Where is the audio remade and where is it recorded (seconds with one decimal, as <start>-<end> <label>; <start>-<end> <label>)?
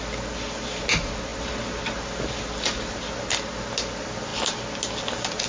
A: 0.0-5.5 recorded